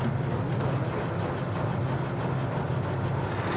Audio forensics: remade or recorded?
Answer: recorded